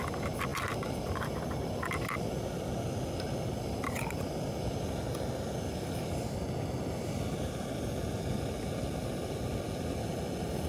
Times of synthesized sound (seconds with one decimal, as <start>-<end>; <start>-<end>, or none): none